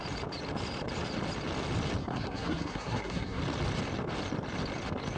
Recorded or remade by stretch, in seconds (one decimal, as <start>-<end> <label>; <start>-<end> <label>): 0.0-2.0 recorded; 2.0-3.4 remade; 3.4-5.2 recorded